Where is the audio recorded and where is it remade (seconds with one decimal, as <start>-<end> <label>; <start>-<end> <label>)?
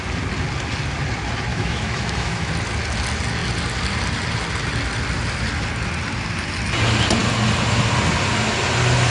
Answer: 0.0-1.5 recorded; 1.5-2.5 remade; 2.5-9.1 recorded